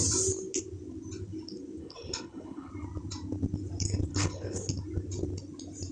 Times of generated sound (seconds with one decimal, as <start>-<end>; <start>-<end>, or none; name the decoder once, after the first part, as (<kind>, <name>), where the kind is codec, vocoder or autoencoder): 1.8-2.7 (codec, HILCodec); 4.1-4.7

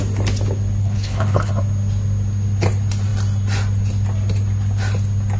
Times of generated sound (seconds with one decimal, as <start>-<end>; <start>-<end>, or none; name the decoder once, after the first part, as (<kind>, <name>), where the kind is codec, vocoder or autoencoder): 0.8-1.5 (codec, HILCodec)

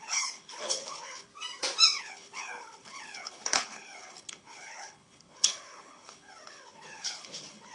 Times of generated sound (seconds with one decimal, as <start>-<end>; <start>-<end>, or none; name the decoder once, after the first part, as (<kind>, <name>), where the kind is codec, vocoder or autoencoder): 0.0-1.3 (codec, HILCodec); 2.0-7.7

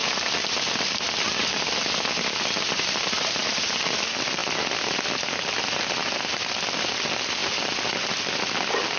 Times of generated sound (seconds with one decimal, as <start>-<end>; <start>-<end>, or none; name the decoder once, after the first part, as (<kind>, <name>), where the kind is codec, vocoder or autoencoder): none